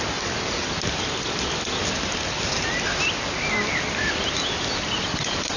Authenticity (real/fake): real